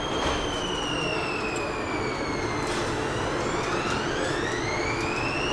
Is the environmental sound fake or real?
real